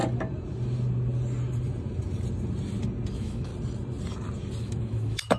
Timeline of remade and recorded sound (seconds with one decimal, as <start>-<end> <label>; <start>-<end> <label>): 0.0-3.1 recorded; 3.1-3.5 remade; 3.5-4.6 recorded; 4.6-5.4 remade

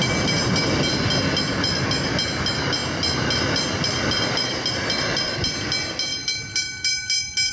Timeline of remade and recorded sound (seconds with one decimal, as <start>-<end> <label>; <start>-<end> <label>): 0.0-7.5 recorded

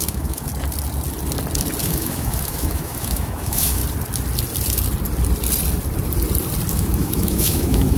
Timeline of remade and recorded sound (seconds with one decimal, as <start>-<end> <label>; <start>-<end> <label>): 0.0-0.5 remade; 0.5-1.8 recorded; 1.8-3.8 remade; 3.8-6.7 recorded; 6.7-8.0 remade